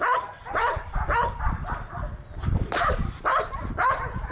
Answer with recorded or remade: recorded